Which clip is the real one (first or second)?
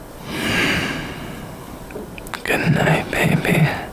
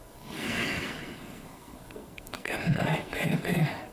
first